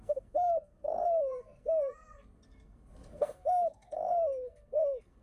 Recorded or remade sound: remade